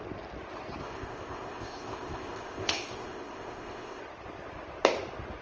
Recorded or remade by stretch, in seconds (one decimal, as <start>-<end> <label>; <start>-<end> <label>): 0.0-0.8 recorded; 0.8-4.0 remade; 4.0-5.4 recorded